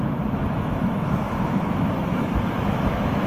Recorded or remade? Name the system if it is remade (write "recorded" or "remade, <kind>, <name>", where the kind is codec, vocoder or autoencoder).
remade, autoencoder, DAC-VAE